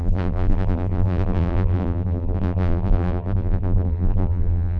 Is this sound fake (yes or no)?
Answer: yes